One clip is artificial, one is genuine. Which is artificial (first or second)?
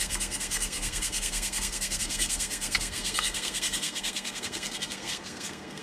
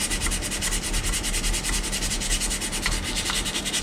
first